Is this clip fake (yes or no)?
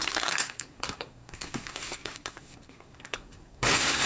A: yes